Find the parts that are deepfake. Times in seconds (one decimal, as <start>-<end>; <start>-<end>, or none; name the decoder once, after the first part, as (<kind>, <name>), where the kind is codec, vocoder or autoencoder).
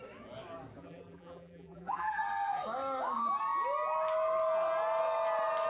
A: 0.8-2.2 (vocoder, BigVGAN v2)